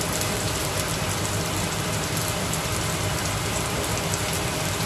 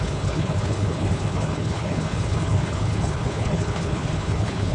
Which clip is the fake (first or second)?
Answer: second